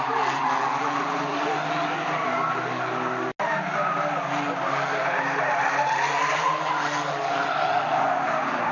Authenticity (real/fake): real